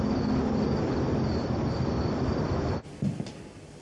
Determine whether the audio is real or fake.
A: real